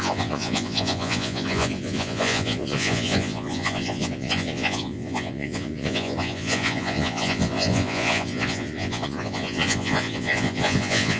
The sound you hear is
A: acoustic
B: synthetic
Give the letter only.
B